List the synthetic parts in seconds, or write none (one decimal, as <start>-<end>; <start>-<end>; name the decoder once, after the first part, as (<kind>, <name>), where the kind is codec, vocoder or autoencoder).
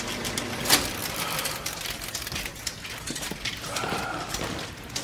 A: 1.0-4.0 (vocoder, BigVGAN v2)